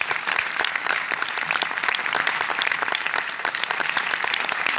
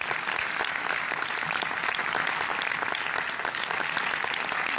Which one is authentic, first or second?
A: second